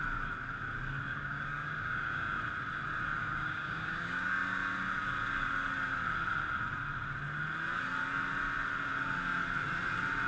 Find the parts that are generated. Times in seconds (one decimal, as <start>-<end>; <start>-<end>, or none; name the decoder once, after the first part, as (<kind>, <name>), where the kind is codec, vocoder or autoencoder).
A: 1.1-2.4 (codec, DAC); 3.2-4.4